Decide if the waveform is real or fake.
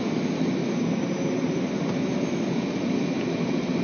real